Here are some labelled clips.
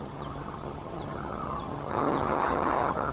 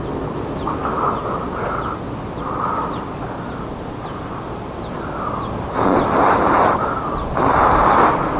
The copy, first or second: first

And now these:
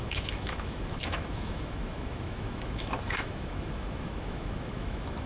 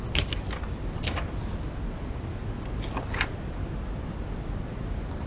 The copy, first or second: first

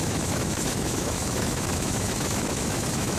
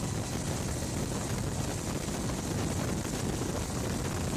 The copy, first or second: first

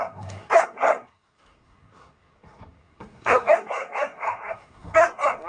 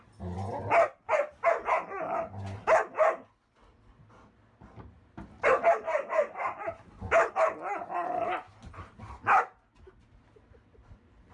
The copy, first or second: first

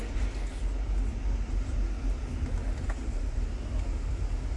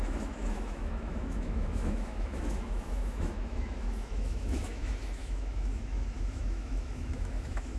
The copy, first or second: second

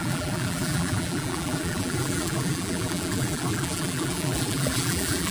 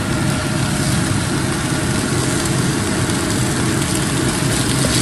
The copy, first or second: first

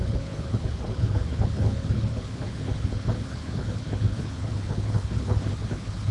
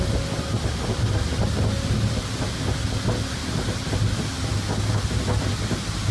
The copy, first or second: first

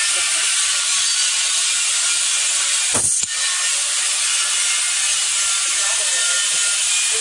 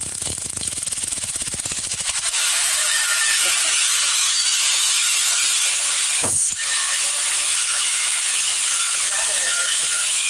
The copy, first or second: second